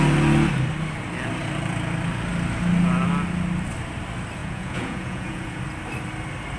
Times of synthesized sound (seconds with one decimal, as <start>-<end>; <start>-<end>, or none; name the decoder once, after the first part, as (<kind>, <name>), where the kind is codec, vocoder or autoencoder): 4.4-5.6 (vocoder, Vocos)

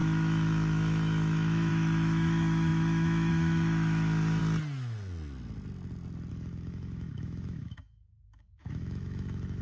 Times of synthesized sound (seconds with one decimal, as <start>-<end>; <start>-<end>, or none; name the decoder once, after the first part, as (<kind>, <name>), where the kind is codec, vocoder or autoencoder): 0.0-4.4 (autoencoder, DAC-VAE); 6.3-9.6

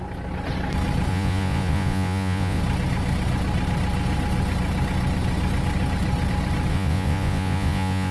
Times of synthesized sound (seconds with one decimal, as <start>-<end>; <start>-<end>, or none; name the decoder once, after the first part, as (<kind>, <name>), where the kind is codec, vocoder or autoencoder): 1.1-2.6 (vocoder, Vocos); 6.7-8.1

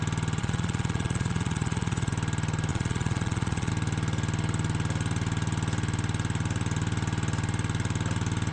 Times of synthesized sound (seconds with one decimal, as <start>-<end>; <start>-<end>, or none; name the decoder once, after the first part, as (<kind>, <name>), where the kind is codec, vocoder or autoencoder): 0.4-2.1 (vocoder, Vocos); 2.7-3.7